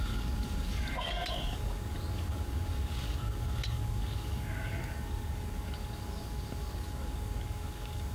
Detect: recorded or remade remade